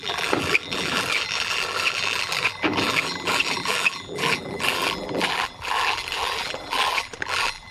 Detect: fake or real fake